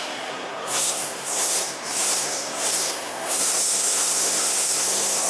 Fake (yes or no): yes